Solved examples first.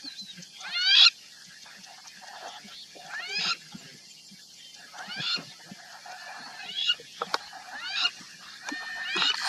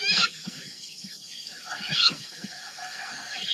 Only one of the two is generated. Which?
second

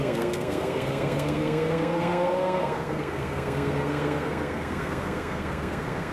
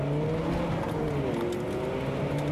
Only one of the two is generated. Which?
first